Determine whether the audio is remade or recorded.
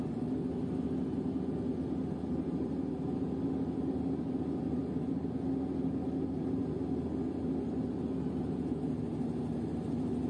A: recorded